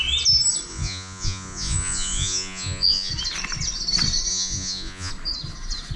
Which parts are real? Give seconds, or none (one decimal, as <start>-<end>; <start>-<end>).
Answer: 0.0-0.7; 3.1-4.3; 5.1-6.0